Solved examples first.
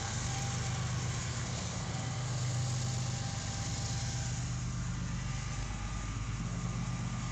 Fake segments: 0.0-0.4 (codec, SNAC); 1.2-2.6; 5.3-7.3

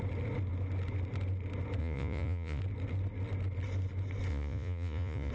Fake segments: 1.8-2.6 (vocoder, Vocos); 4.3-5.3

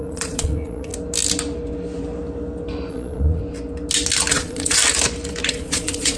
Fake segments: 0.0-0.9 (vocoder, Vocos); 2.9-3.4; 4.3-4.8; 5.5-6.2